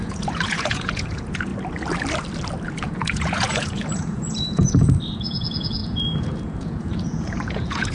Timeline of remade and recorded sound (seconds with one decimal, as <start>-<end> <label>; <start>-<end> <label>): 0.0-1.5 remade; 1.5-2.8 recorded; 2.8-7.9 remade